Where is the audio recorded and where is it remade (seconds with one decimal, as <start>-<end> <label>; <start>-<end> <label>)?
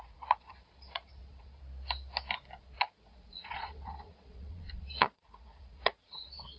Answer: 0.0-1.6 remade; 1.6-2.6 recorded; 2.6-6.6 remade